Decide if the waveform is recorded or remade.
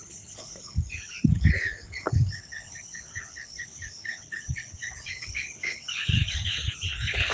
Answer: remade